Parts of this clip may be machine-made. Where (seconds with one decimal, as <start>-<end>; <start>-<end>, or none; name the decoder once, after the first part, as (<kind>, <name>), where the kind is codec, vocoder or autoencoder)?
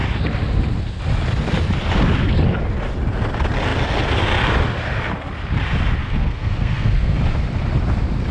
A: 6.0-7.2 (codec, SNAC)